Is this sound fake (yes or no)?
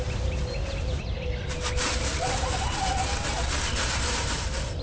no